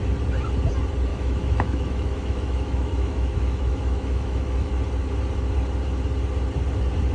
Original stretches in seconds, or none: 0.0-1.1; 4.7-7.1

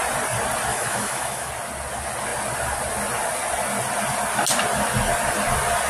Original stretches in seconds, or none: 0.0-0.7; 1.5-5.9

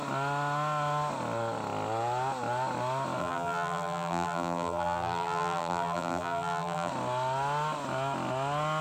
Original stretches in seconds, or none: 0.0-3.2; 6.9-8.8